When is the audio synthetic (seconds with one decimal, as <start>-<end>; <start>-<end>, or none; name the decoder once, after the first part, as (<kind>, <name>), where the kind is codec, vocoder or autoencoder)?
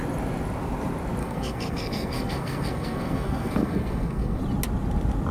1.2-4.4 (codec, SNAC)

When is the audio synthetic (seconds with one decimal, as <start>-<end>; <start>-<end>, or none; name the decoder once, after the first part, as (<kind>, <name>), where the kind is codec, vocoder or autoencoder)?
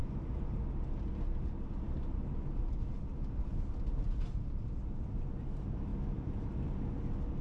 0.0-0.6 (vocoder, BigVGAN v2); 5.9-6.8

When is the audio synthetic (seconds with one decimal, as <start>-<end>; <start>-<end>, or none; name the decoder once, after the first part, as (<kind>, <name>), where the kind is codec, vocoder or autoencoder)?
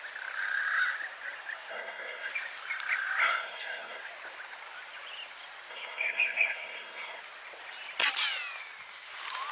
1.7-2.3 (codec, SNAC); 3.2-4.0; 5.7-7.2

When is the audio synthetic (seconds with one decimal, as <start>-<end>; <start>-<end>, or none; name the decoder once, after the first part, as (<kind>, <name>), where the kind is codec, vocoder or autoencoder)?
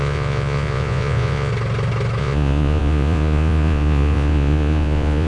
0.0-1.5 (vocoder, Vocos); 2.2-5.3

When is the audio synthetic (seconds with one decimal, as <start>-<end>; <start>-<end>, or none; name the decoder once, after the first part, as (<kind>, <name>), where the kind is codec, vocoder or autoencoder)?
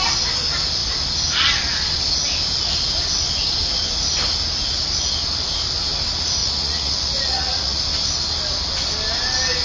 6.4-7.8 (vocoder, Vocos)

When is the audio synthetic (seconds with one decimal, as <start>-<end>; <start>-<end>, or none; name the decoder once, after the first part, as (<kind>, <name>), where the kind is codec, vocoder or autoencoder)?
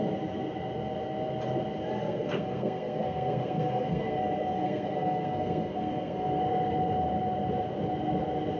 2.0-6.4 (codec, SNAC)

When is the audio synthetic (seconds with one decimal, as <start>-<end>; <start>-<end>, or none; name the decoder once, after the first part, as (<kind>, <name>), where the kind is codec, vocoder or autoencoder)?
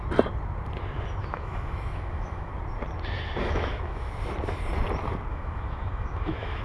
1.2-2.5 (autoencoder, DAC-VAE); 3.4-4.1; 5.3-6.6